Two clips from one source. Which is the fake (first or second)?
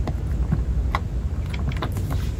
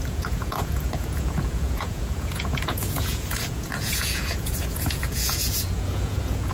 second